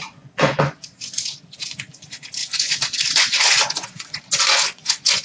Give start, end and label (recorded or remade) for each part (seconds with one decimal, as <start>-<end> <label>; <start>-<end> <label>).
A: 0.0-5.2 remade